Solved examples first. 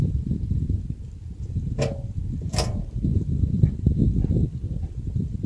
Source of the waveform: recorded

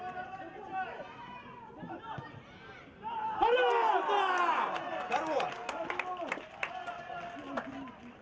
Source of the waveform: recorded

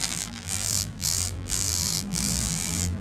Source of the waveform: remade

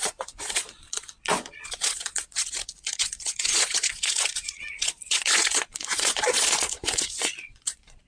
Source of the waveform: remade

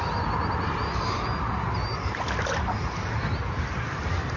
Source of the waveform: recorded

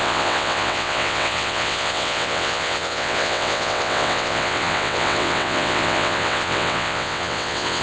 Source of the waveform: remade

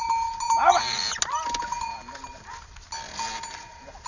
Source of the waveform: recorded